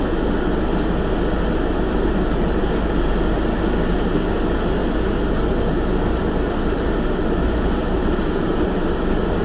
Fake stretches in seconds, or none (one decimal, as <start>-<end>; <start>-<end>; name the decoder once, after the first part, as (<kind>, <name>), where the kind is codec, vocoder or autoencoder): none